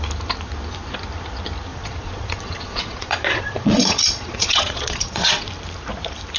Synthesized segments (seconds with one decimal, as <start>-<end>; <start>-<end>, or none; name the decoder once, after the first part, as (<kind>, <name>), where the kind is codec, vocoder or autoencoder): 1.7-5.5 (vocoder, Vocos)